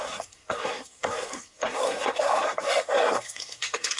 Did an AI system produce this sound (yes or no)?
yes